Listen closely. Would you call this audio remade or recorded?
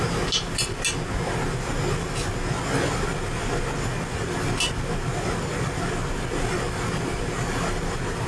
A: recorded